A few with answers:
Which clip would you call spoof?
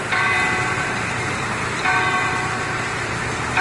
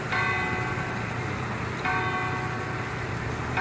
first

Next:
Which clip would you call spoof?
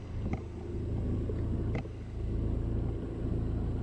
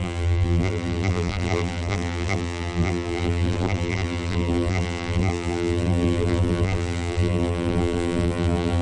second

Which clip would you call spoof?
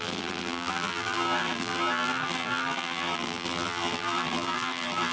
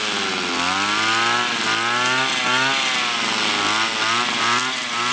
first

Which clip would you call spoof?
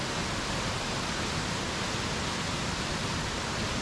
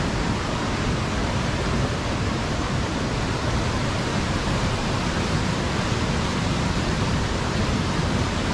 second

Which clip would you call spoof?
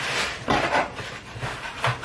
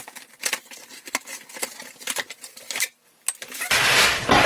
first